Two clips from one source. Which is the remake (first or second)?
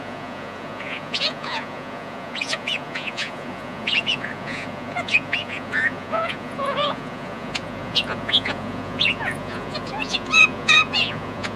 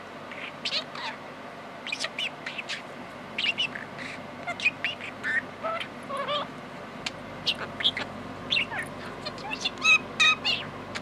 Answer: first